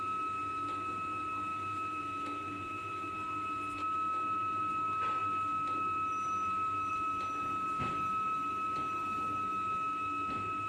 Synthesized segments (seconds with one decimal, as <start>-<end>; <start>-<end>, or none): 1.5-3.1; 3.8-4.6